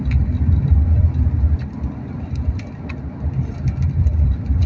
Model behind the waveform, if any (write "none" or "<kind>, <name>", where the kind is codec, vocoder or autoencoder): none